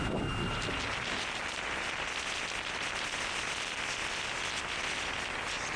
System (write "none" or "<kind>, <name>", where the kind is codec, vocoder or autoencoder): none